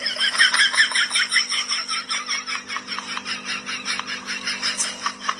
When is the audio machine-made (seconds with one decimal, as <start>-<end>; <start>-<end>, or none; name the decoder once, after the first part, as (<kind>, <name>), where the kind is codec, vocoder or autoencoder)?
none